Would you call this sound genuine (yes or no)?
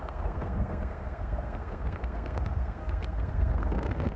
no